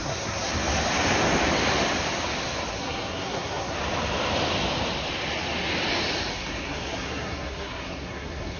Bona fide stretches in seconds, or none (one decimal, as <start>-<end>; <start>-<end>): 0.5-2.7; 3.8-6.3

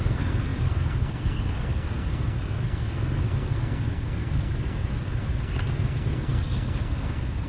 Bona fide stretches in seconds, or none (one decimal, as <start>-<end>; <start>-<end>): none

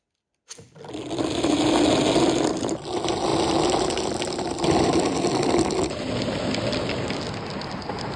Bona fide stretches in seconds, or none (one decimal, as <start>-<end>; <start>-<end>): 0.0-8.2